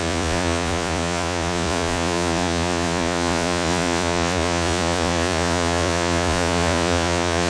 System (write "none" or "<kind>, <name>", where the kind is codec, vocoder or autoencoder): vocoder, Vocos